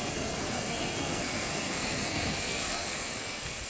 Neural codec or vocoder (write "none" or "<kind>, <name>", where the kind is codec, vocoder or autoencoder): codec, SNAC